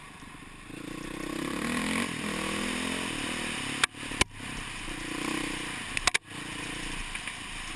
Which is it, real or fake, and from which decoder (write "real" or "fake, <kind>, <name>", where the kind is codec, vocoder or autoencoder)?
real